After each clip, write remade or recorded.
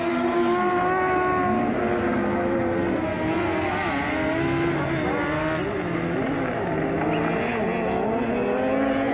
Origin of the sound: recorded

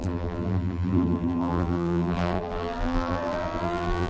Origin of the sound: remade